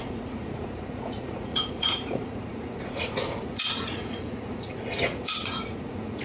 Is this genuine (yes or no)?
no